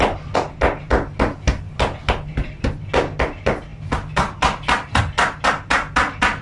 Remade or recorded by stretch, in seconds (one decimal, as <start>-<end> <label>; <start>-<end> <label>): 0.0-6.4 recorded